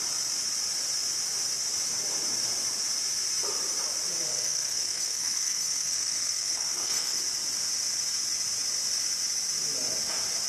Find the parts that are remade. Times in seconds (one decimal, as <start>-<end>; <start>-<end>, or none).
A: 4.3-7.2

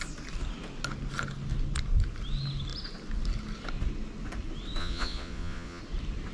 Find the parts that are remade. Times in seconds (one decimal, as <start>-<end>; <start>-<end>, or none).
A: 4.8-5.8

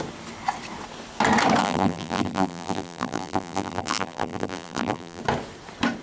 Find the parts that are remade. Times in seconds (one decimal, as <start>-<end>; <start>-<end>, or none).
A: 1.6-5.2

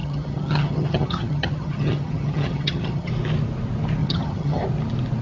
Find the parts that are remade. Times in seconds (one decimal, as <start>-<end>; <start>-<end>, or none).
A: 0.0-3.1; 4.0-4.6

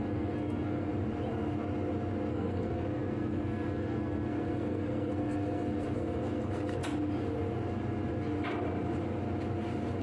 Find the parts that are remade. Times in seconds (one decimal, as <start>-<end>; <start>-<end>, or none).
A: 0.0-0.9; 2.3-6.8

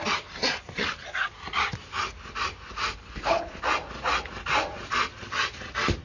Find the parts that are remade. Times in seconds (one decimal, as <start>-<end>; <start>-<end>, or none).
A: 3.0-3.6

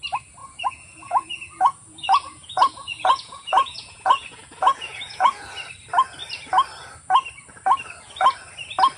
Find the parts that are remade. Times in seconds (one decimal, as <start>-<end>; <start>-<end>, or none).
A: 0.4-5.5

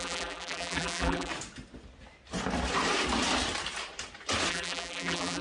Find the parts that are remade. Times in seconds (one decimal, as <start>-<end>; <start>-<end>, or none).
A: 0.0-1.3; 4.5-5.4